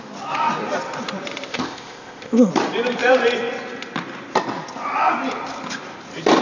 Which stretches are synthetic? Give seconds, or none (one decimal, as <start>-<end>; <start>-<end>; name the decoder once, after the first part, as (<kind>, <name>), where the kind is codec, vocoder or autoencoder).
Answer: 1.5-2.5 (codec, ZipCodec)

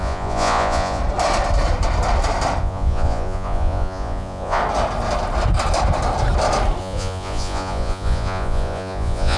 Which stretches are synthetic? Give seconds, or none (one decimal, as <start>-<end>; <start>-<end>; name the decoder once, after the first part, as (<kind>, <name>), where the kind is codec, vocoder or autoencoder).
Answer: 0.0-1.0 (vocoder, Vocos); 2.6-4.6; 6.8-9.4

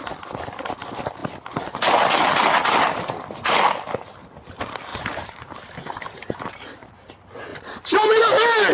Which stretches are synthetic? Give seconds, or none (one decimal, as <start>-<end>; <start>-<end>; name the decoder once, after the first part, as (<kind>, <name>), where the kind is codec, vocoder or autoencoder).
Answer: 4.9-6.9 (vocoder, BigVGAN v2); 7.5-8.2

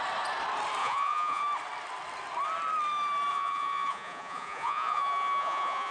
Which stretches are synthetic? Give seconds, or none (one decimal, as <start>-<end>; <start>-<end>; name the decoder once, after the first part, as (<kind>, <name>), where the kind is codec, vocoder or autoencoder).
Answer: 0.8-1.4 (vocoder, Vocos); 3.3-5.9

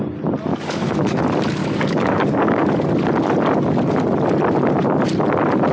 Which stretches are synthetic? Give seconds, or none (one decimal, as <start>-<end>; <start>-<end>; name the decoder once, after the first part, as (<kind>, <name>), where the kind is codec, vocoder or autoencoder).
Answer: 0.5-1.2 (codec, DAC); 1.6-2.7

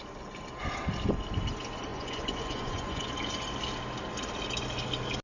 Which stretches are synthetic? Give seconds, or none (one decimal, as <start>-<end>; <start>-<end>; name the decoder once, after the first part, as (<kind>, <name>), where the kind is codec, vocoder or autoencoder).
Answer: 1.9-3.1 (vocoder, Vocos)

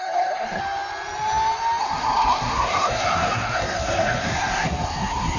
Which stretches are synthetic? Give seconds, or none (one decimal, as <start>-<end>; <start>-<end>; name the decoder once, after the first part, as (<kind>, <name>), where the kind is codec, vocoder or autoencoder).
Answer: 0.0-0.6 (codec, SNAC); 1.8-5.4